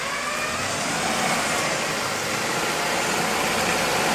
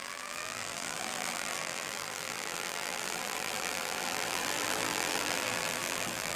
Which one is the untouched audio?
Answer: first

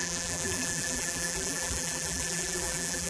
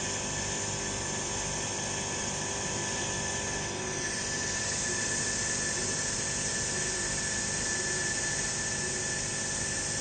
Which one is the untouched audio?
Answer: second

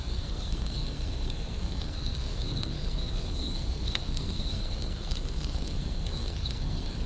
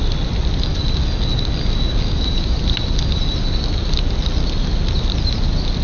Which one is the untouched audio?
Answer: second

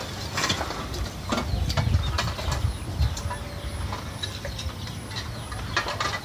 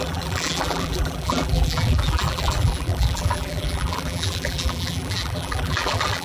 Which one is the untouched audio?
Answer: first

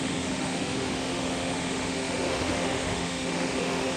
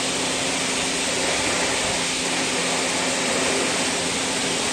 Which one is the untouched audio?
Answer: second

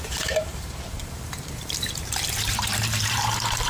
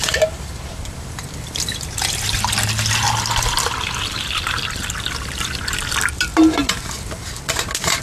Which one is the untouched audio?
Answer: second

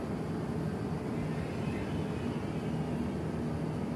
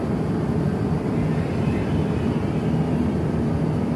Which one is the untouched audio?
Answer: first